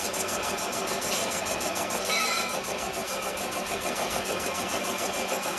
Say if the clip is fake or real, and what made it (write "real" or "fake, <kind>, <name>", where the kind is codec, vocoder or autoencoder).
fake, codec, SNAC